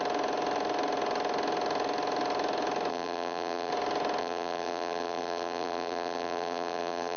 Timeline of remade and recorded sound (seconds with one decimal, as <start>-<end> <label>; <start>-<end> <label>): 0.0-2.9 recorded; 2.9-3.7 remade; 3.7-4.2 recorded; 4.2-7.2 remade